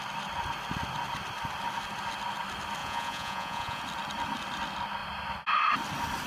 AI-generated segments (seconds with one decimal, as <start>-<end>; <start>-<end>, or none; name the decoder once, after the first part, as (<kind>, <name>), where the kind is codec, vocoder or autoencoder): 2.8-3.8 (vocoder, Vocos)